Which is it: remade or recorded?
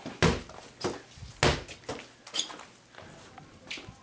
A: recorded